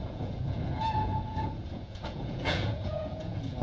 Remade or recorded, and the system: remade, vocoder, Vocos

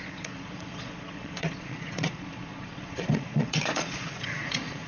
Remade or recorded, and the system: remade, vocoder, Vocos